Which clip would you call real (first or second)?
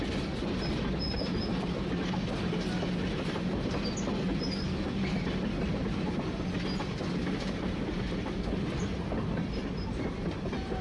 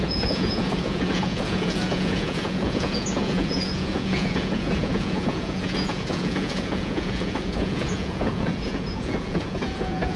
first